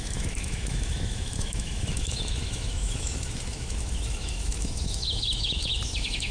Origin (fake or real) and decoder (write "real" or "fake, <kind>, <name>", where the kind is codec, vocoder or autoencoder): fake, autoencoder, DAC-VAE